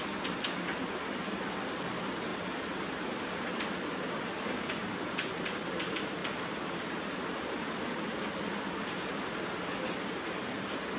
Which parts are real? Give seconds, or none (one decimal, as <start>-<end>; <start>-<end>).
0.0-11.0